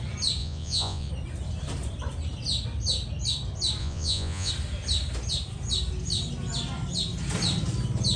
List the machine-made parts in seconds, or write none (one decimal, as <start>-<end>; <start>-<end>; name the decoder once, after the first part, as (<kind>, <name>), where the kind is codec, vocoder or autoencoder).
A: 0.4-1.1 (vocoder, Vocos); 3.8-4.5